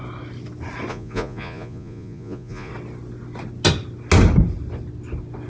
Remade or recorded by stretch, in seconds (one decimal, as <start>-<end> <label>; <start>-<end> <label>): 0.0-0.9 recorded; 0.9-2.7 remade; 2.7-5.5 recorded